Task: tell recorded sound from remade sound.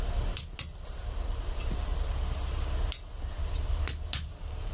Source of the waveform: recorded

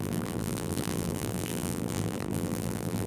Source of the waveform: remade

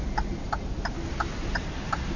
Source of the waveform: recorded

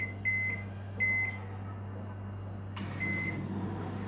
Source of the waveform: recorded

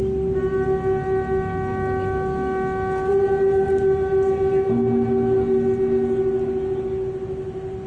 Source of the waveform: recorded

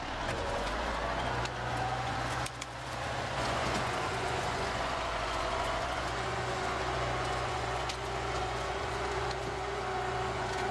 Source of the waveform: remade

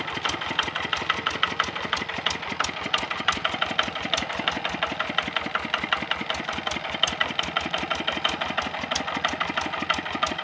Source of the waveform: recorded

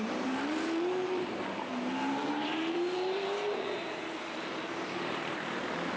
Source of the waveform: remade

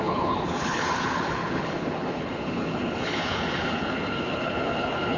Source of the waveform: remade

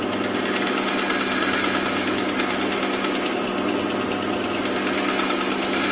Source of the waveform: recorded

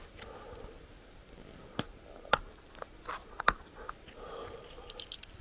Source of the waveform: recorded